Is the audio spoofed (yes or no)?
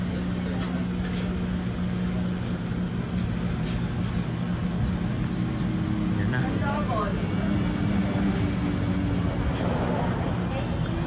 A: no